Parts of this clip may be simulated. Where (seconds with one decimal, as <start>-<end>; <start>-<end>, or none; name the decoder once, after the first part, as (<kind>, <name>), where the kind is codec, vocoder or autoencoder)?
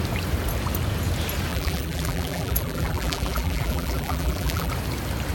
1.5-4.7 (vocoder, BigVGAN v2)